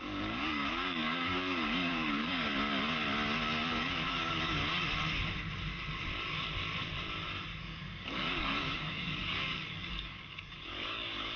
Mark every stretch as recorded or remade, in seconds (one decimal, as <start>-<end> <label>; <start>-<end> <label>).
0.0-2.5 remade; 2.5-3.7 recorded; 3.7-4.6 remade; 4.6-7.6 recorded; 7.6-11.4 remade